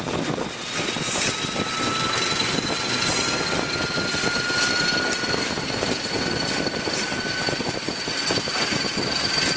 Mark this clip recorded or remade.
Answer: recorded